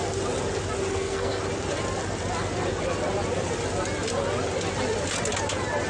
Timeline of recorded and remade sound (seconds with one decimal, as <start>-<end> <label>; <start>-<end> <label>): 0.0-0.9 recorded; 0.9-1.4 remade; 1.4-5.9 recorded